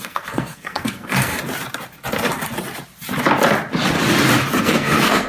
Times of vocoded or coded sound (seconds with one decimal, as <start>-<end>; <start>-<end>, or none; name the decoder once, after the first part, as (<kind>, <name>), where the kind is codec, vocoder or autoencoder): 0.0-1.4 (codec, SNAC); 4.6-5.3